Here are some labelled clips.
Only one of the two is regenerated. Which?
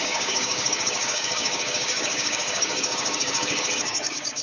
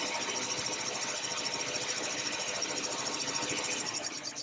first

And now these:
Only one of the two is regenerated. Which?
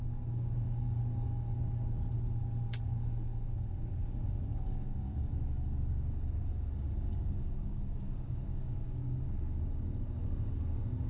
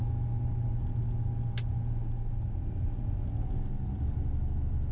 first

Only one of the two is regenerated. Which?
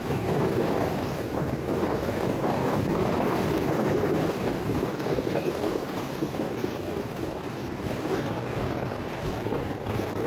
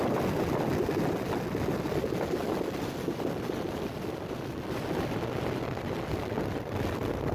first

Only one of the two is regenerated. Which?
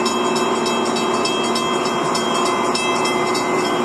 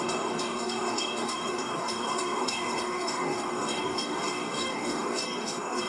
second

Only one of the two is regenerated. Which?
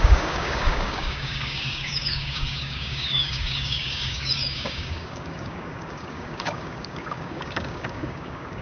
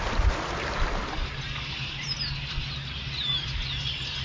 first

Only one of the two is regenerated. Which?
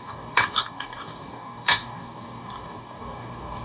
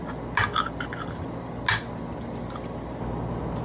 first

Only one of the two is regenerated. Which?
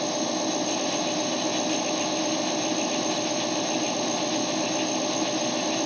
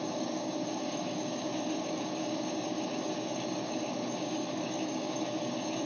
second